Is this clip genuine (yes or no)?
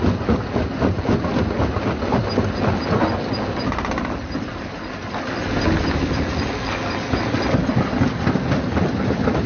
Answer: yes